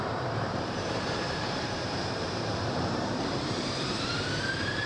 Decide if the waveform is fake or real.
fake